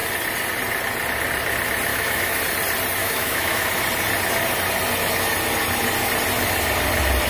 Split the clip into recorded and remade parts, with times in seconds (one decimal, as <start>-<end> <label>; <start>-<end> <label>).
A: 0.0-1.9 recorded; 1.9-2.4 remade; 2.4-3.0 recorded; 3.0-3.6 remade; 3.6-7.3 recorded